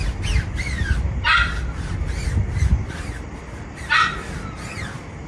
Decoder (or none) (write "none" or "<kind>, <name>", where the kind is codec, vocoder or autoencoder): vocoder, BigVGAN v2